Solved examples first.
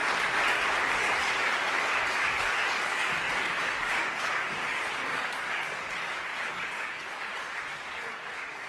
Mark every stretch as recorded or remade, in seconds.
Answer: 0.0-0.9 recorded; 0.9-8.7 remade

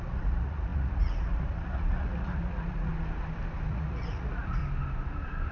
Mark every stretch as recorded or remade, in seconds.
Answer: 0.0-2.9 remade; 2.9-3.7 recorded; 3.7-4.6 remade; 4.6-5.5 recorded

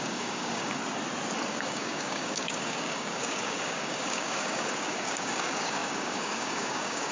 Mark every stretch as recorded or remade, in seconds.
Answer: 0.0-0.8 remade; 0.8-1.5 recorded; 1.5-7.1 remade

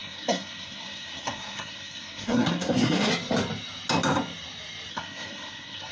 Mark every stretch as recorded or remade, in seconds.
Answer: 0.0-3.1 remade; 3.1-4.9 recorded; 4.9-5.9 remade

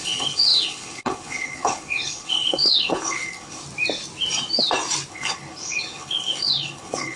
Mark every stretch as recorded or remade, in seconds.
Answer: 0.0-3.6 remade; 3.6-5.1 recorded; 5.1-7.2 remade